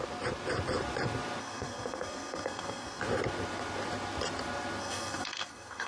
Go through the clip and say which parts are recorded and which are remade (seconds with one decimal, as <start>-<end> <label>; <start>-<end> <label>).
0.0-1.4 recorded; 1.4-3.0 remade; 3.0-4.8 recorded; 4.8-5.9 remade